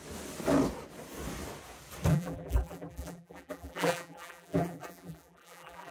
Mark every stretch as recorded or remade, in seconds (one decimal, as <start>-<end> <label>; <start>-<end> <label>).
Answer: 0.0-2.1 recorded; 2.1-5.9 remade